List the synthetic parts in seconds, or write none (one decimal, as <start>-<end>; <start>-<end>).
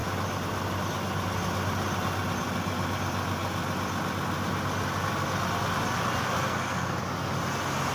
6.2-7.0